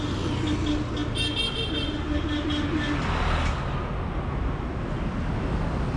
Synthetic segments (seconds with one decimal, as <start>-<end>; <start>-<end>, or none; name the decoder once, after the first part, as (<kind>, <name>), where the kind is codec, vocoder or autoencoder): none

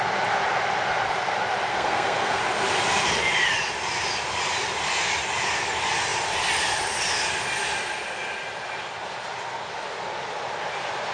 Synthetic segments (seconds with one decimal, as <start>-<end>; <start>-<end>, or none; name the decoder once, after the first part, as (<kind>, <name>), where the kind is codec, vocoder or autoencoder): 1.7-2.4 (codec, SNAC)

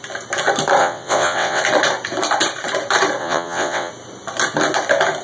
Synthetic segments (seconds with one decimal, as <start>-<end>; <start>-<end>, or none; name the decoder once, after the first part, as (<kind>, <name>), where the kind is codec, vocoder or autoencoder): 0.8-1.6 (vocoder, WaveNeXt); 3.2-3.9